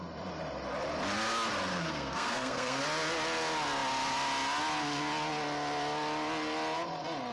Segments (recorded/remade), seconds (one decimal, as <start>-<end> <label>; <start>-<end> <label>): 0.0-1.7 recorded; 1.7-2.8 remade; 2.8-7.3 recorded

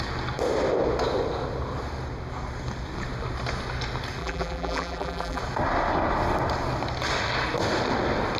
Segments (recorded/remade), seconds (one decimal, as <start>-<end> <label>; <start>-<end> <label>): 0.0-4.2 recorded; 4.2-5.4 remade; 5.4-8.4 recorded

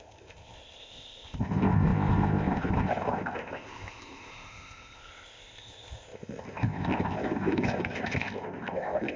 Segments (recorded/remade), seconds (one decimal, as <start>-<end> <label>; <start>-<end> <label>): 0.0-9.2 remade

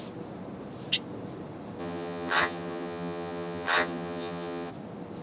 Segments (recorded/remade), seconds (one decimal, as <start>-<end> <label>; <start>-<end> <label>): 0.0-1.8 recorded; 1.8-4.7 remade; 4.7-5.2 recorded

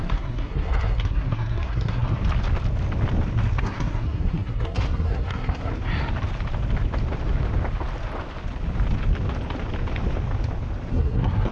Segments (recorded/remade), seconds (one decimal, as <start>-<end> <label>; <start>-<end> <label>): 0.0-2.2 remade; 2.2-3.6 recorded; 3.6-5.7 remade; 5.7-10.9 recorded; 10.9-11.5 remade

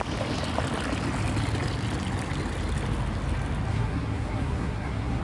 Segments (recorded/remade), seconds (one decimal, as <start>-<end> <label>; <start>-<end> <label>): 0.0-3.7 recorded; 3.7-5.2 remade